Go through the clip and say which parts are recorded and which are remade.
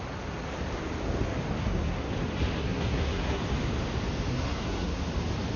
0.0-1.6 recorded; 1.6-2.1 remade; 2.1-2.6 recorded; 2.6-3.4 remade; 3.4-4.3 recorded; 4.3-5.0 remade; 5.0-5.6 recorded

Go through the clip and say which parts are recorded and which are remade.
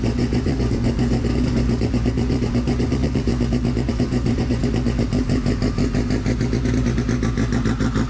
0.0-3.3 remade; 3.3-3.9 recorded; 3.9-4.6 remade; 4.6-8.1 recorded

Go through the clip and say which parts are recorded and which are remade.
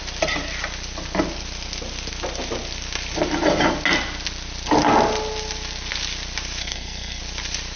0.0-6.6 recorded; 6.6-7.2 remade; 7.2-7.8 recorded